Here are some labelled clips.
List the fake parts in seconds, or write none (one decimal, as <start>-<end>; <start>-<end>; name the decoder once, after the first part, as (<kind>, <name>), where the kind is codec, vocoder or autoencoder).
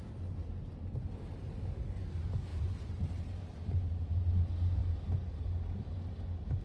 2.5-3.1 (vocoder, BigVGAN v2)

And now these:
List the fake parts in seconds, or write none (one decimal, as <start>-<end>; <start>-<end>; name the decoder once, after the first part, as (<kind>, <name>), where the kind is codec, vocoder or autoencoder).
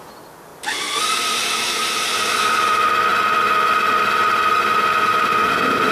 none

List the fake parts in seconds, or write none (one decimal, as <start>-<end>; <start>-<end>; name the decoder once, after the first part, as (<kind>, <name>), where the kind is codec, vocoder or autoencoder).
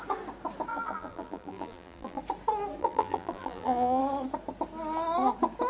0.7-2.2 (vocoder, BigVGAN v2); 2.8-4.0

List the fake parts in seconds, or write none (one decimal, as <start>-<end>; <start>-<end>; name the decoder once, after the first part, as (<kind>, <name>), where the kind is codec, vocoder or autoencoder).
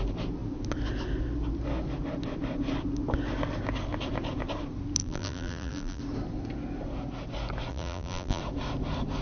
5.0-6.0 (vocoder, BigVGAN v2); 7.7-8.4